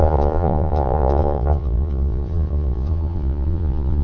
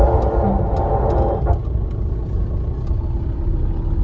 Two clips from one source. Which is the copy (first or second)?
first